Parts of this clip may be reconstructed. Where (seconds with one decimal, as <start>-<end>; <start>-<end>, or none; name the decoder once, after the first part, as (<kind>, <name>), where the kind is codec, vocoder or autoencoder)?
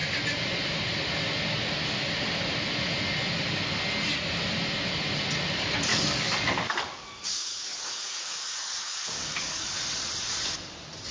5.9-9.7 (codec, DAC)